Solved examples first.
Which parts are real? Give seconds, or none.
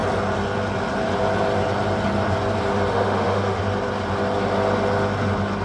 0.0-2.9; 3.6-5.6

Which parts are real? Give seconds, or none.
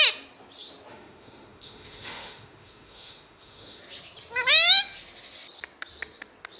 0.0-0.9; 3.8-6.6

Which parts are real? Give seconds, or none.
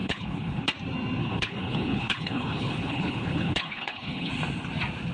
0.6-1.2; 4.3-5.1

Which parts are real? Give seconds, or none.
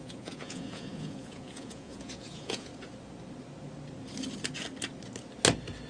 2.7-5.9